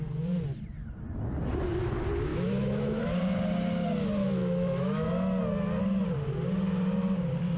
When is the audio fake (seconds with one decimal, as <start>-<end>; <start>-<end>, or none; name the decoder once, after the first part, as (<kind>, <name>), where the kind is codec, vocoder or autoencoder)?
2.3-3.0 (autoencoder, DAC-VAE); 4.2-5.1